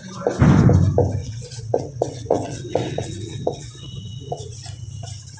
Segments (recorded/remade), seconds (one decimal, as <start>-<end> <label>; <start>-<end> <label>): 0.0-1.2 recorded; 1.2-4.4 remade; 4.4-5.4 recorded